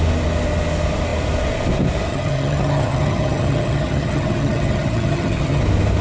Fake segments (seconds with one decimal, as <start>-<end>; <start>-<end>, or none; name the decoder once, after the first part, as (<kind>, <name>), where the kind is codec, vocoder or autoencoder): 2.1-5.6 (vocoder, HiFi-GAN)